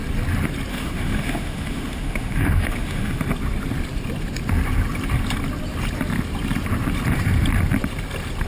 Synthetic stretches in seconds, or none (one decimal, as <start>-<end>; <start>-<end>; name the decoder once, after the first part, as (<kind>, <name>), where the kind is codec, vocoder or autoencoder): 0.7-3.2 (autoencoder, DAC-VAE)